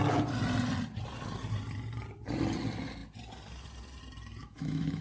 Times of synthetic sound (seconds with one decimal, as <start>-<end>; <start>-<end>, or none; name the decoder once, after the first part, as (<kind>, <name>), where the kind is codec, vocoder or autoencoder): 4.4-5.0 (autoencoder, DAC-VAE)